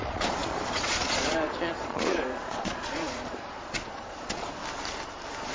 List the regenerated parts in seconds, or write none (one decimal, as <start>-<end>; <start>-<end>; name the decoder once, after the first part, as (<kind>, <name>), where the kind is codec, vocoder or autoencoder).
0.0-4.6 (vocoder, Vocos)